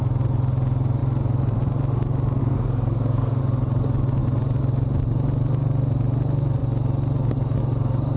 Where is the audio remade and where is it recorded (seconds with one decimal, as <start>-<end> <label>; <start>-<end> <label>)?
0.0-2.4 recorded; 2.4-3.4 remade; 3.4-8.2 recorded